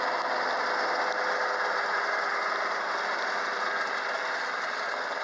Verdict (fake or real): real